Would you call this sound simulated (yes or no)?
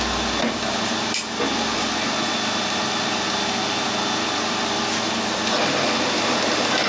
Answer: no